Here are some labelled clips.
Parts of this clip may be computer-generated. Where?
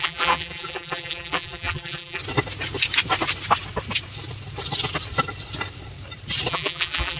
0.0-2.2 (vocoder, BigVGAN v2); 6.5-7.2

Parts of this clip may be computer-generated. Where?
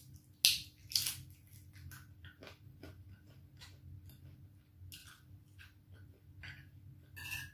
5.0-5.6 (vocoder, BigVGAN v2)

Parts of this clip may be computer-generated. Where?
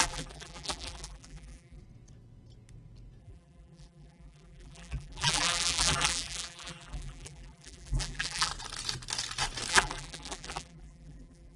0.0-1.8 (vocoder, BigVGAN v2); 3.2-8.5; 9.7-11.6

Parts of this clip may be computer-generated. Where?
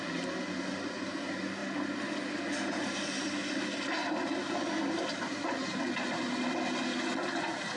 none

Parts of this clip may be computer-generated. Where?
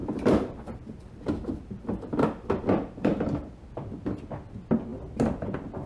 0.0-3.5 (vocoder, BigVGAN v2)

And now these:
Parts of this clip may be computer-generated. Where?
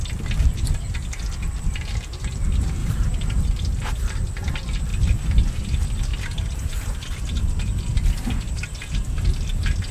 2.8-3.4 (vocoder, BigVGAN v2); 4.9-5.6